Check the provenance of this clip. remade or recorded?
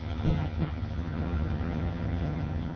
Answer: remade